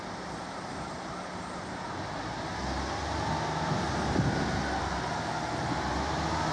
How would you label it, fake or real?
real